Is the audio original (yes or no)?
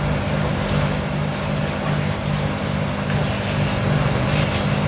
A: yes